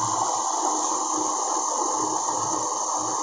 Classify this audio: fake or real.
real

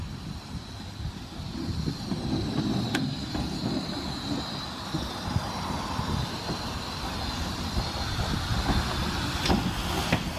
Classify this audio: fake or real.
real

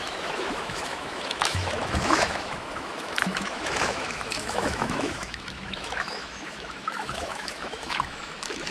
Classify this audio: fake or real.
fake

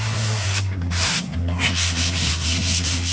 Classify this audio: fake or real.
fake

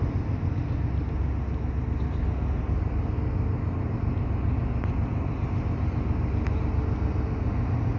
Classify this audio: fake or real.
real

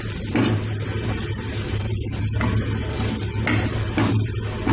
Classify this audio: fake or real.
real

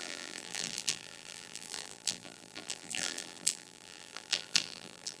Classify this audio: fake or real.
fake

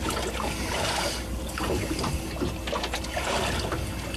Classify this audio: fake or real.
real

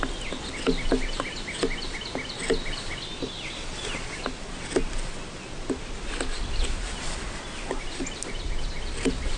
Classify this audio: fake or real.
real